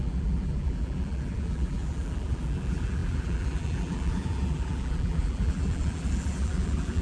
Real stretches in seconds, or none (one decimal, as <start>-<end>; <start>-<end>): none